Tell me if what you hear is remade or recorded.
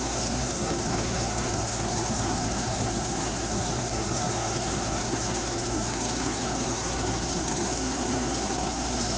remade